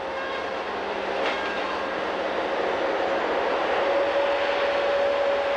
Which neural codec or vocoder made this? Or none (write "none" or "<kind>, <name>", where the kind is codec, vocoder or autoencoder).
none